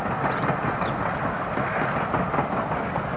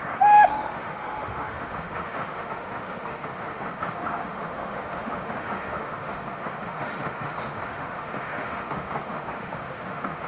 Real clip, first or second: first